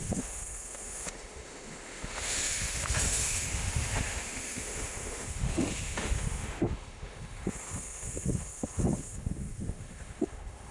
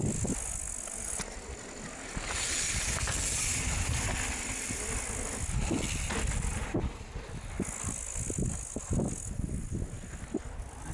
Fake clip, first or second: first